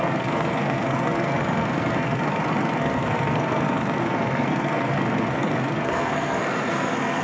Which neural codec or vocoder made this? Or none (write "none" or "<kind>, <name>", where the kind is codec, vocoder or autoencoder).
codec, SNAC